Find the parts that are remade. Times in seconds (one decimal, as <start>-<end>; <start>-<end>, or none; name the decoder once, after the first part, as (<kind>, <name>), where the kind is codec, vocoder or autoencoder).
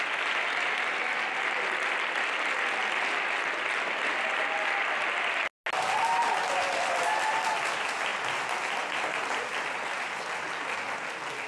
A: none